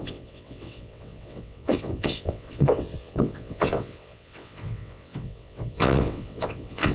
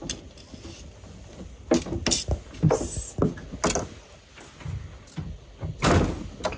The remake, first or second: first